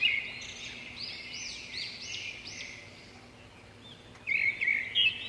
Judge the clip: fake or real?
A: real